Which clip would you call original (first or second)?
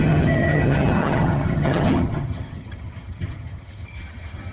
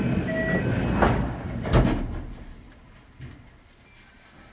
second